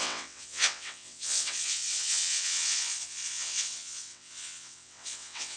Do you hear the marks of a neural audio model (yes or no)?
yes